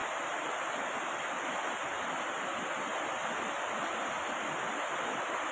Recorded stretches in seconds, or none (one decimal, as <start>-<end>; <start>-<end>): 0.0-5.5

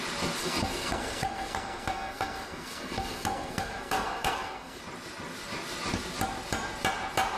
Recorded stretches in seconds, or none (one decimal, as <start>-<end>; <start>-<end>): 0.0-0.4; 4.8-7.4

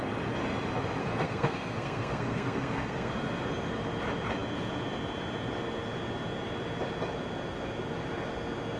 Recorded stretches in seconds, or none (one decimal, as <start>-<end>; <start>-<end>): 0.0-1.0; 3.1-8.8

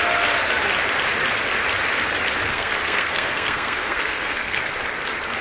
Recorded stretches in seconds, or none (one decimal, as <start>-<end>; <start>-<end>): 0.0-2.5; 4.6-5.4